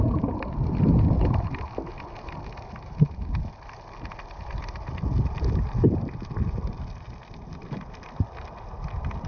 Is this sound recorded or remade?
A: recorded